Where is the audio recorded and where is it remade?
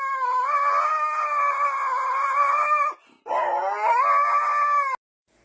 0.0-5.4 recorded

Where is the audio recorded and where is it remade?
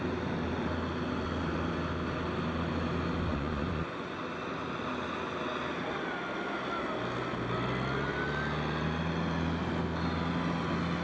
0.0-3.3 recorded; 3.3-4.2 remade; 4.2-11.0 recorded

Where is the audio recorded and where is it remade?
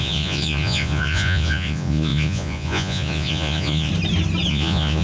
0.0-3.9 remade; 3.9-4.5 recorded; 4.5-5.0 remade